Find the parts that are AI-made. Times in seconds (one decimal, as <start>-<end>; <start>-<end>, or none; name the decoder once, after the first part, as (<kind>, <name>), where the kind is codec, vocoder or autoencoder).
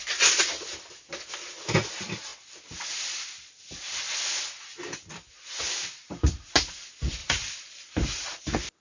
7.2-8.4 (vocoder, BigVGAN v2)